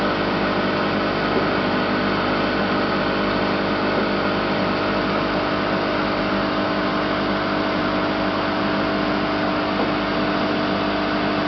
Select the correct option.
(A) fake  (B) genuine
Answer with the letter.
B